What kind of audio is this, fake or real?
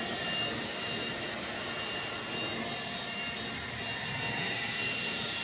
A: real